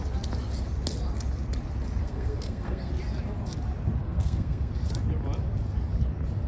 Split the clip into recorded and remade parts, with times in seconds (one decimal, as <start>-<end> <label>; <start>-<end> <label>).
0.0-2.0 recorded; 2.0-2.9 remade; 2.9-4.0 recorded; 4.0-4.7 remade; 4.7-6.5 recorded